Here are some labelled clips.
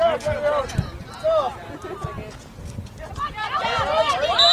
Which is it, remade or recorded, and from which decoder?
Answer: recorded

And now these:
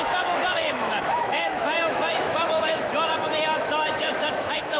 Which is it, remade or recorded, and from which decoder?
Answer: remade, autoencoder, DAC-VAE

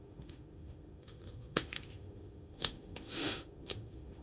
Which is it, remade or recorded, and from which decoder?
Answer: remade, autoencoder, DAC-VAE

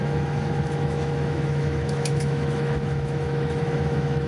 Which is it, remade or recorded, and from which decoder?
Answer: remade, autoencoder, DAC-VAE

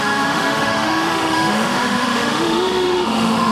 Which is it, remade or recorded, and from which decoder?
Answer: remade, autoencoder, DAC-VAE